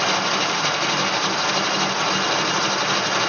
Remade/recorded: recorded